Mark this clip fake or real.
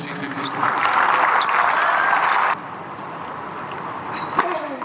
real